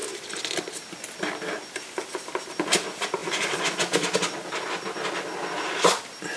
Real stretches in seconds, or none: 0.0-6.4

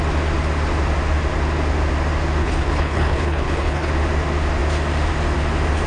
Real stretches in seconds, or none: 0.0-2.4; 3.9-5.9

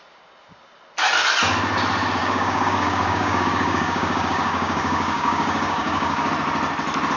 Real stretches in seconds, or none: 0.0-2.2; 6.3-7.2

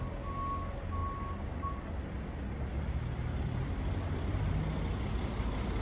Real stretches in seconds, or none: 0.0-5.8

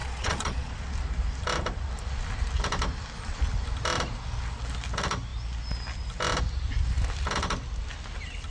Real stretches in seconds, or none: 0.7-8.5

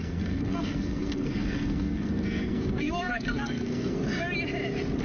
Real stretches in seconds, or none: 4.0-5.0